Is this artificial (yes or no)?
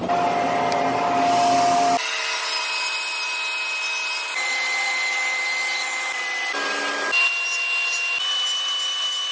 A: no